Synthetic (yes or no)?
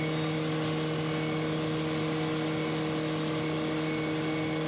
no